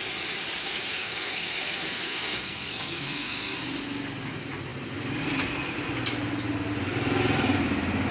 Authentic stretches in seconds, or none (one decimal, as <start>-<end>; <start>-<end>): 0.0-0.6; 3.6-8.1

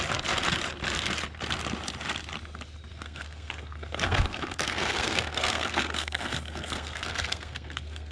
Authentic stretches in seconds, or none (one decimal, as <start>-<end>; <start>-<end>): 0.0-2.9

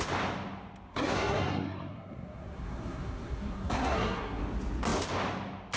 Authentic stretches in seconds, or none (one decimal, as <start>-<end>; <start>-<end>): 0.0-0.9; 4.4-5.8

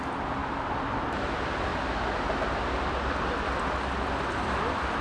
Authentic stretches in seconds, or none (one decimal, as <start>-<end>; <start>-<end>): 0.0-5.0

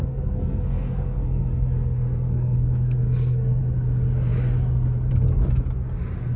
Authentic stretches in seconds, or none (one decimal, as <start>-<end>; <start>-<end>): 3.6-6.4